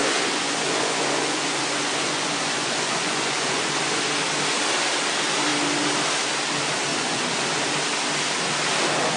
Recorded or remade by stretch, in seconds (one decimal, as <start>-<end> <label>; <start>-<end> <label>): 0.0-4.0 remade; 4.0-6.9 recorded; 6.9-7.6 remade; 7.6-9.2 recorded